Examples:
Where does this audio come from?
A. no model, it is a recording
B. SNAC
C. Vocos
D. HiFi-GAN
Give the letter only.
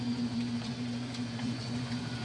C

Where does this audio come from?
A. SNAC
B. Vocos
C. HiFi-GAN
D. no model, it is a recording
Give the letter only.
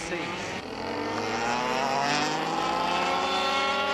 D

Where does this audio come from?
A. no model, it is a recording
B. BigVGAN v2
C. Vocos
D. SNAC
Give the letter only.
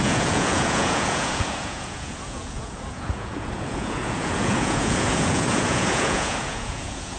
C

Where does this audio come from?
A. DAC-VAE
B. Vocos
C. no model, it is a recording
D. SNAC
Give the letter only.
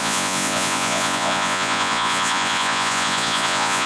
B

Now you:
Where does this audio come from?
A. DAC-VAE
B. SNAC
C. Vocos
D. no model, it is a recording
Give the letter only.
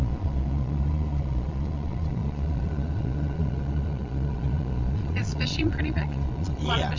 C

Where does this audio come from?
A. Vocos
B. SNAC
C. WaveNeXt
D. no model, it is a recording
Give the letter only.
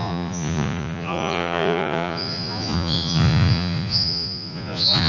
A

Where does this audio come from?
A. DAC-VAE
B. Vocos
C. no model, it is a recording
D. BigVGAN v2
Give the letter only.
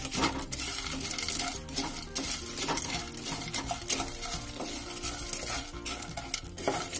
C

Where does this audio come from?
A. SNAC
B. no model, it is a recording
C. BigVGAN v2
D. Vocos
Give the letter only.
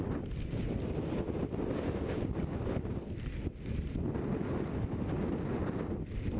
C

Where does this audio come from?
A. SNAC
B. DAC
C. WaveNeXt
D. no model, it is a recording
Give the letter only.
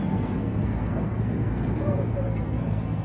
A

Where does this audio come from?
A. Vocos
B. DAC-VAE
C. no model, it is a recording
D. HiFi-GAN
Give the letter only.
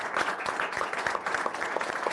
A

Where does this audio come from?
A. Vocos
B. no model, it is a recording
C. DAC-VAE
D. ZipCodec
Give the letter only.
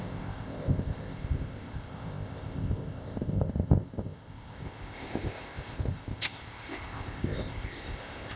D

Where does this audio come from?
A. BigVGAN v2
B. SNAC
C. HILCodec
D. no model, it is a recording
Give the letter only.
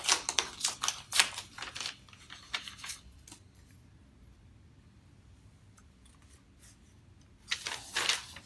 D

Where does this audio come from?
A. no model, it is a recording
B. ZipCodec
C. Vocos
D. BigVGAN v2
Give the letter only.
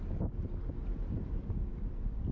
A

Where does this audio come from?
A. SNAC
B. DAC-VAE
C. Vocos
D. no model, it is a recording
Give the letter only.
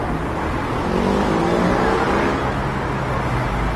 D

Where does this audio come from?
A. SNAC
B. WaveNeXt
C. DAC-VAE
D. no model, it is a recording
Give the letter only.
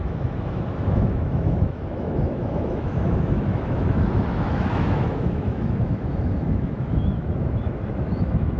C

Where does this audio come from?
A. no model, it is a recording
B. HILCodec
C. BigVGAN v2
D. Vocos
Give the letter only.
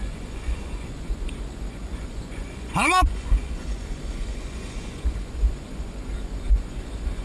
D